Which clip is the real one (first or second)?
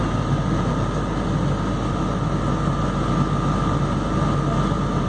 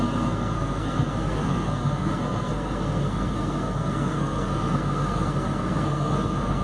first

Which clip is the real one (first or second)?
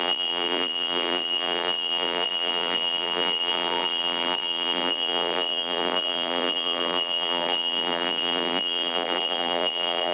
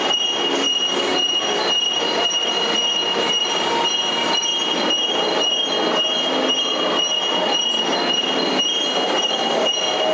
second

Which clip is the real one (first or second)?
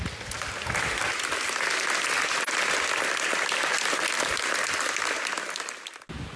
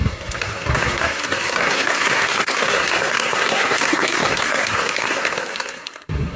first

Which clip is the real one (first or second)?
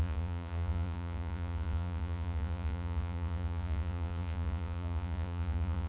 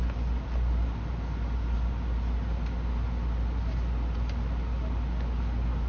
second